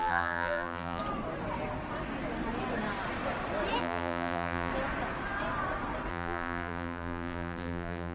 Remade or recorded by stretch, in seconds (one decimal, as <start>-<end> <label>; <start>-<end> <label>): 0.0-1.0 remade; 1.0-3.8 recorded; 3.8-4.7 remade; 4.7-6.1 recorded; 6.1-8.1 remade